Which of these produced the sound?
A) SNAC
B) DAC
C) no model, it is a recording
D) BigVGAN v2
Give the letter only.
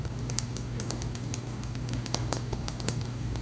B